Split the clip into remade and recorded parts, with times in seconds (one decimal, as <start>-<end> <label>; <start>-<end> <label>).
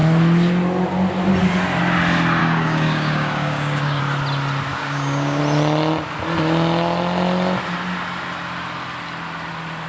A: 0.0-2.4 recorded; 2.4-4.0 remade; 4.0-4.7 recorded; 4.7-5.4 remade; 5.4-9.9 recorded